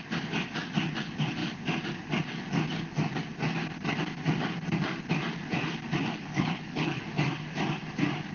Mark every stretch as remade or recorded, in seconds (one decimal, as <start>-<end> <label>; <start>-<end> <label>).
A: 0.0-6.1 recorded; 6.1-7.0 remade; 7.0-8.3 recorded